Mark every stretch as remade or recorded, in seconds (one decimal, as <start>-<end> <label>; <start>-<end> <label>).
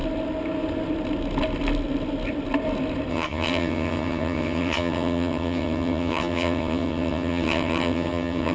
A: 0.0-3.1 recorded; 3.1-8.5 remade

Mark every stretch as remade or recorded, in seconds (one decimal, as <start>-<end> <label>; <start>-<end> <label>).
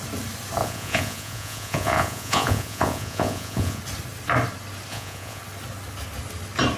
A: 0.0-0.6 recorded; 0.6-3.8 remade; 3.8-4.9 recorded; 4.9-5.4 remade; 5.4-6.8 recorded